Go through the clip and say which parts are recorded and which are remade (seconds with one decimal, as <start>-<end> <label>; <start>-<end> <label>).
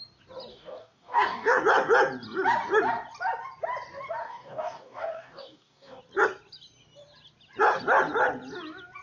0.0-0.5 recorded; 0.5-1.6 remade; 1.6-4.2 recorded; 4.2-6.0 remade; 6.0-9.0 recorded